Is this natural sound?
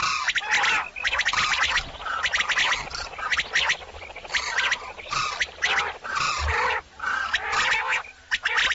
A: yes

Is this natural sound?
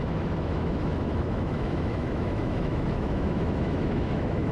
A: no